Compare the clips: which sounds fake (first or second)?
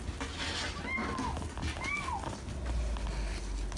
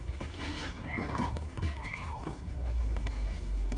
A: second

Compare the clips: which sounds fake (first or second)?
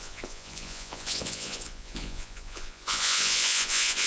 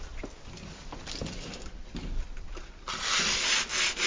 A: first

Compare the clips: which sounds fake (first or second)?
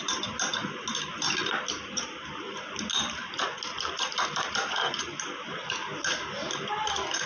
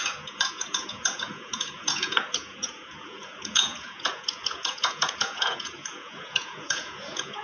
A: second